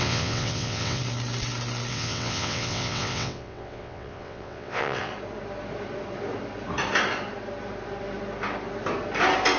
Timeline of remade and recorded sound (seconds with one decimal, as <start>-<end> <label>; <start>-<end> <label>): 0.0-1.0 remade; 1.0-1.9 recorded; 1.9-5.1 remade; 5.1-9.6 recorded